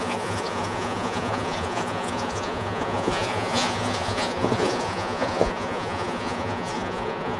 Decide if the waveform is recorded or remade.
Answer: remade